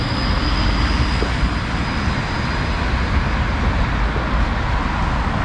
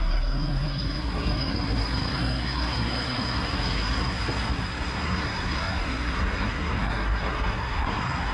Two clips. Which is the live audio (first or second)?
first